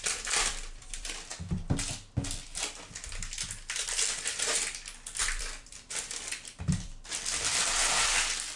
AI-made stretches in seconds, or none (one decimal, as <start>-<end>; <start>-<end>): 0.0-1.3; 5.2-7.8